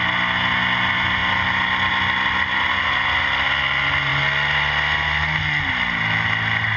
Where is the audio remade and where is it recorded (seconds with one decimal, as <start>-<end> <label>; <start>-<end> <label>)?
0.0-6.8 recorded

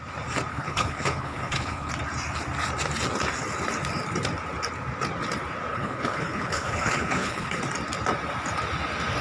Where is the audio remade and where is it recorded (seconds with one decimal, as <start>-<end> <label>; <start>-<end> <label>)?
0.0-0.5 recorded; 0.5-1.9 remade; 1.9-5.7 recorded; 5.7-7.6 remade; 7.6-9.2 recorded